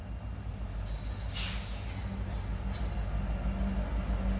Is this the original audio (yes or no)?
yes